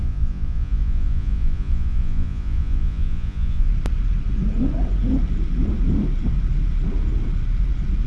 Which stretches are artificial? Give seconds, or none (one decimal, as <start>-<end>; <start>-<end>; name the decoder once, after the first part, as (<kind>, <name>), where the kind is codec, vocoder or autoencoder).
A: 0.0-3.7 (vocoder, Vocos)